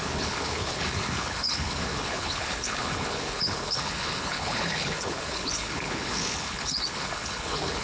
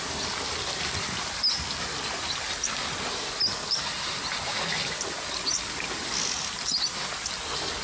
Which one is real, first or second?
second